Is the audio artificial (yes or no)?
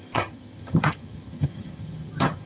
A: yes